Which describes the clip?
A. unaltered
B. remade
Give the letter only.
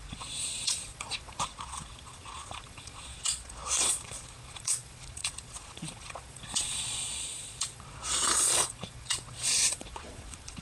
B